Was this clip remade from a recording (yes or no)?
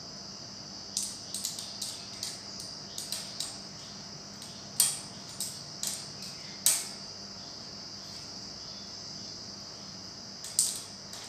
no